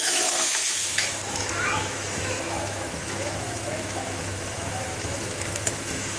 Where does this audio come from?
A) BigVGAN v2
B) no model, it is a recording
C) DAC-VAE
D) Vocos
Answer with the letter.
C